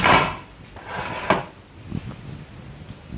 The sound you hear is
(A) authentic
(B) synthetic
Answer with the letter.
A